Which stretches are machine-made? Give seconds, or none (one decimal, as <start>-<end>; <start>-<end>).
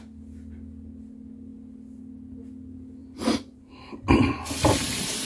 3.0-3.6